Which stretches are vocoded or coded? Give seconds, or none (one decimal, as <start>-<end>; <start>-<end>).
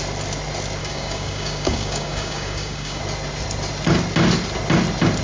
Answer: 0.8-3.0